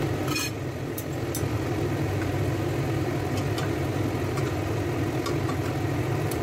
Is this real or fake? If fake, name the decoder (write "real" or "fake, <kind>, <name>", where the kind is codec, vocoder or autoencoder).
real